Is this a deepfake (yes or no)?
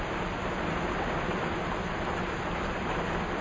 no